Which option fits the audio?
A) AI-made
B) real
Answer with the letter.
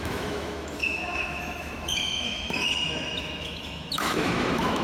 A